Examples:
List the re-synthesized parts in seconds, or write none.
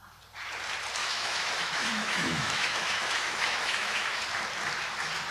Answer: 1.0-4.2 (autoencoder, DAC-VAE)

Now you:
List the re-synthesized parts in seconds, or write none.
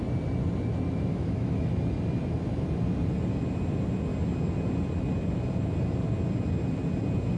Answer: 1.1-1.7 (autoencoder, DAC-VAE)